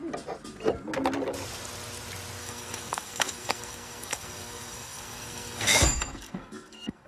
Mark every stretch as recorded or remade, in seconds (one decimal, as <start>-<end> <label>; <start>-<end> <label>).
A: 0.0-2.4 recorded; 2.4-7.1 remade